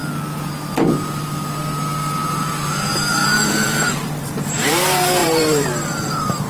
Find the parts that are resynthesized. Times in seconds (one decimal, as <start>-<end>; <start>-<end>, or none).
2.3-6.5